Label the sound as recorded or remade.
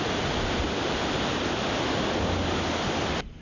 recorded